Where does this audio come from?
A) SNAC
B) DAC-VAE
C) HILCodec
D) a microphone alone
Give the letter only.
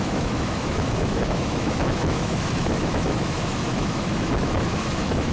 B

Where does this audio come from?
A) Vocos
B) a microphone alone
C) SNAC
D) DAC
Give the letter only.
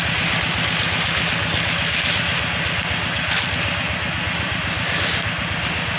B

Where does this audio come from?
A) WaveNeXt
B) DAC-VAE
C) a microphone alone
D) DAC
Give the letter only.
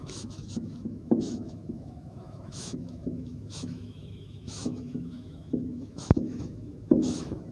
B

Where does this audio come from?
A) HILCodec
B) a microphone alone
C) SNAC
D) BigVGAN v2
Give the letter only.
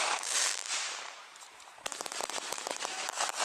D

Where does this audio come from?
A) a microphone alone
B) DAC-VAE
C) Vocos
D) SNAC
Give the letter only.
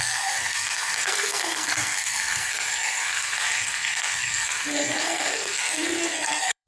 D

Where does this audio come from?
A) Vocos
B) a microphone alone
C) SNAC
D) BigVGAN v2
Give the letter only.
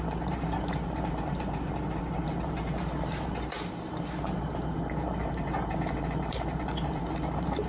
D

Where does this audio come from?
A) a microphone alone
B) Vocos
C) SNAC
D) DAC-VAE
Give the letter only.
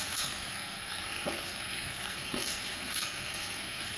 C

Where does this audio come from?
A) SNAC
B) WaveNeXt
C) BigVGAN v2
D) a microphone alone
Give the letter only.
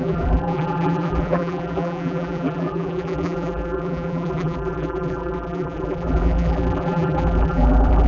C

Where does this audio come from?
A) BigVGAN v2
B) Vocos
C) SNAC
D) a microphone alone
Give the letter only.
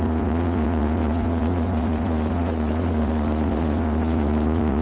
B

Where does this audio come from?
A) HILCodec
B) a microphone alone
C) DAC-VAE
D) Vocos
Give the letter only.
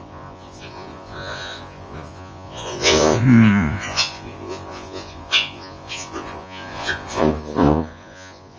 D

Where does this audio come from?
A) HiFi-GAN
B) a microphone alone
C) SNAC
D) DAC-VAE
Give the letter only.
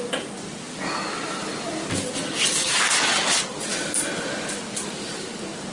B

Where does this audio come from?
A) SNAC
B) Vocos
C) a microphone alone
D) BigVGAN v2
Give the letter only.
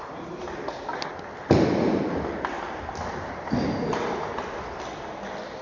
C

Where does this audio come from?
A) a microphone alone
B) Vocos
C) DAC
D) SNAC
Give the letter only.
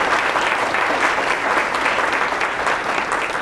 A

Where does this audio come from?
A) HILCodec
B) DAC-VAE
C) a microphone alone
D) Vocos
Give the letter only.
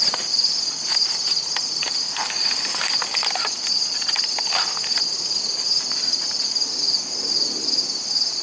C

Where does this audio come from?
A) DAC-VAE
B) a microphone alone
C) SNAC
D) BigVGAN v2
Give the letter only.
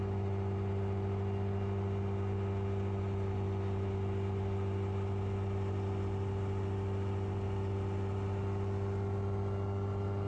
B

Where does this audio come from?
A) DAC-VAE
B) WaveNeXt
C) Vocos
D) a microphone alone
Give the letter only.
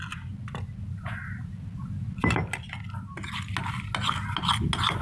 D